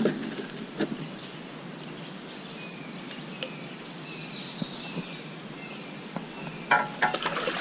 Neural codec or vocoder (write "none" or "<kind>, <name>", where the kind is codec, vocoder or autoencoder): none